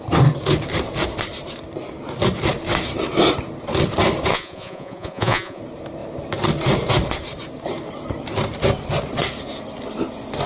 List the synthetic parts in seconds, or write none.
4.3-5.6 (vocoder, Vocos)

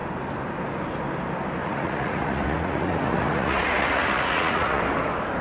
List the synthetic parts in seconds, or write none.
1.6-4.8 (vocoder, Vocos)

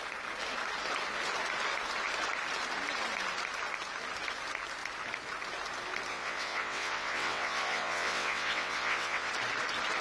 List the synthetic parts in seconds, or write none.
6.1-9.3 (vocoder, WaveNeXt)